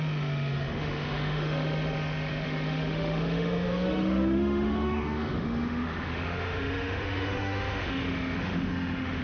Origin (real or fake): fake